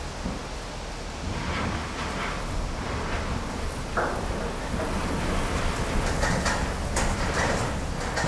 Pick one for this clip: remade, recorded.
recorded